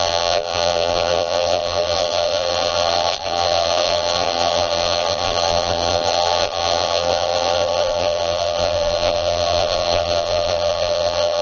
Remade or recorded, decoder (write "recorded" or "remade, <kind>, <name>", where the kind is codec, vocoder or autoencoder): remade, vocoder, BigVGAN v2